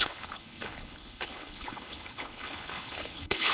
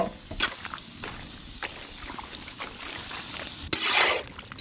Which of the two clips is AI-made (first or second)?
first